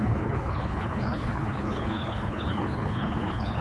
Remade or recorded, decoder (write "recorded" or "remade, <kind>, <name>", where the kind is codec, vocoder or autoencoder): remade, codec, HILCodec